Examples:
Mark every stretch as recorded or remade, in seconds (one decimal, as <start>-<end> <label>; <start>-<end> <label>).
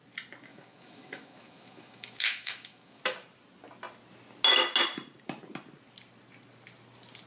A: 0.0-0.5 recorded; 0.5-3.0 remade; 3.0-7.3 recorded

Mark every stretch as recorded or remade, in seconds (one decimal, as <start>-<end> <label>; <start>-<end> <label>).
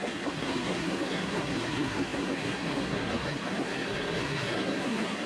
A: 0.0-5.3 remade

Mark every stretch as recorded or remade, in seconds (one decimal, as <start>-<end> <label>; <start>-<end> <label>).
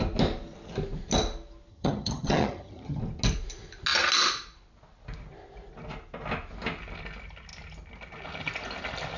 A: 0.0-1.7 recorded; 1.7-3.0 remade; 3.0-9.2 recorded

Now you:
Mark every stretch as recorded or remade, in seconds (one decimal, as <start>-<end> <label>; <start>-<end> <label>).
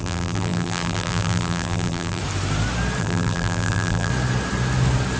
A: 0.0-2.2 remade; 2.2-3.0 recorded; 3.0-4.1 remade; 4.1-5.2 recorded